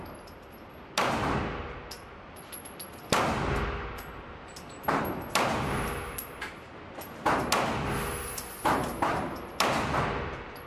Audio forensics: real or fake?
real